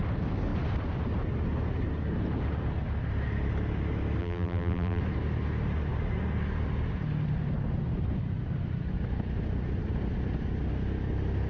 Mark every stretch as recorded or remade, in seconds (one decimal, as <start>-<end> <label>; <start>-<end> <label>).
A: 0.0-4.2 recorded; 4.2-5.0 remade; 5.0-11.5 recorded